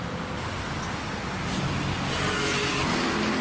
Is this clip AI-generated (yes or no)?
no